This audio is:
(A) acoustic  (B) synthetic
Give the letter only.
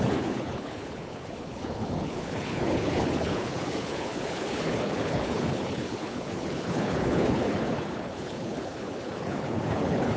B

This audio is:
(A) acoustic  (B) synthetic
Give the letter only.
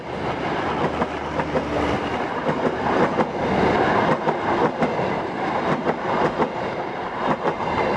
A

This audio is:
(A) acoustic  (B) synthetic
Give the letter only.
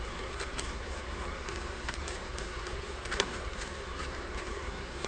B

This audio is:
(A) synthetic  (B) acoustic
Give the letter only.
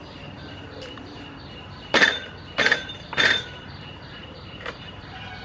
A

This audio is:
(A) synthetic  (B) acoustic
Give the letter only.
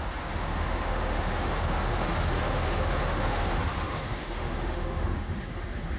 A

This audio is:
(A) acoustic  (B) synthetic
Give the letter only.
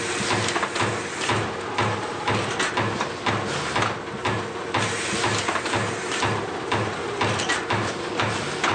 A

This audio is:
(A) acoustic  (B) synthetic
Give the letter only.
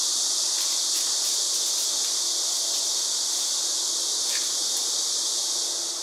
A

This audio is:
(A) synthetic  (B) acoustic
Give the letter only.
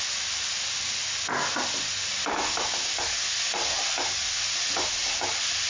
B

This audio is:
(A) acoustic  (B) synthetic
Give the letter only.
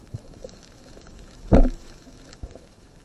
B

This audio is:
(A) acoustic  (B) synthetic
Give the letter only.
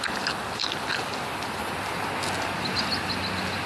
A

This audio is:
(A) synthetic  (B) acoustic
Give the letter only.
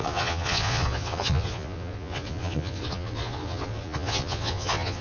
A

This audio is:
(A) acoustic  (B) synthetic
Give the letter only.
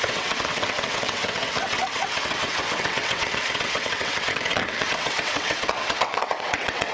B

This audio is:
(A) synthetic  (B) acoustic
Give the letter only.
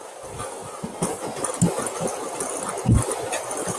B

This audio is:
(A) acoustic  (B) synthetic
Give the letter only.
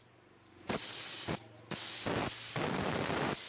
B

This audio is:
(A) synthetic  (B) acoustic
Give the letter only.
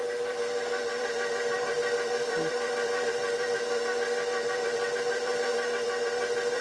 A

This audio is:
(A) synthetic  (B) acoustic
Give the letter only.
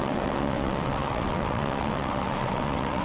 A